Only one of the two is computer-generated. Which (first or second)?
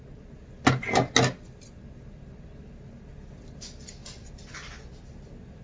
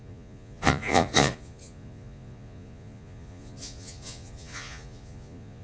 second